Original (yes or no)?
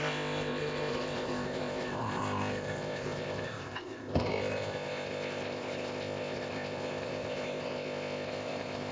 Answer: no